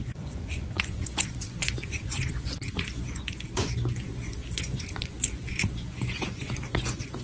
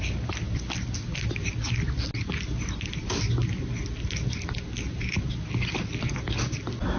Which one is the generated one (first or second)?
first